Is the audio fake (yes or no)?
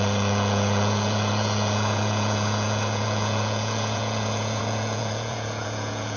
yes